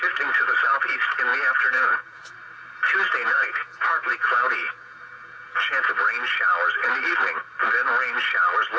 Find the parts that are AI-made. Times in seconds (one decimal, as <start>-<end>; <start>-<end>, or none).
1.3-2.3; 3.2-5.9